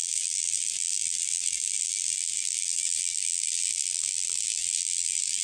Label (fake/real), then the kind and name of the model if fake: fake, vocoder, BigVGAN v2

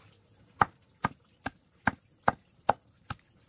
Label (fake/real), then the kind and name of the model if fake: real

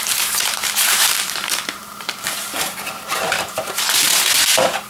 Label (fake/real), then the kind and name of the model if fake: fake, vocoder, BigVGAN v2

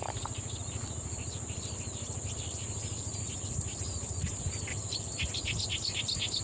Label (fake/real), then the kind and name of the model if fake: real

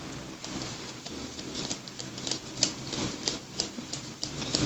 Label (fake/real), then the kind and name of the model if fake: fake, vocoder, BigVGAN v2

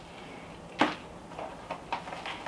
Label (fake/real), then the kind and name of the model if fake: real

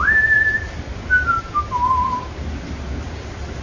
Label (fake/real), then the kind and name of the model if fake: real